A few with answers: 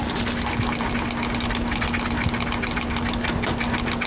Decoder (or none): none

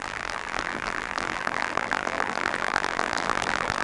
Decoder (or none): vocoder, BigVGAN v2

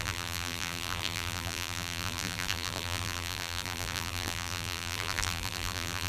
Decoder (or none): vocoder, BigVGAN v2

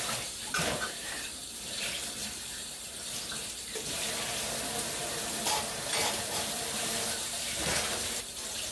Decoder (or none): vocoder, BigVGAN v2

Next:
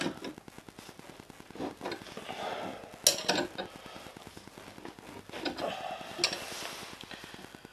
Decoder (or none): none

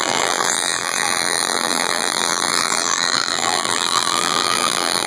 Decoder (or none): vocoder, BigVGAN v2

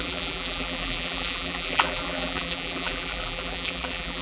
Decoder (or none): vocoder, BigVGAN v2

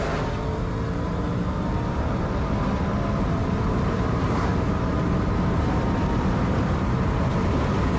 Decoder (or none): vocoder, BigVGAN v2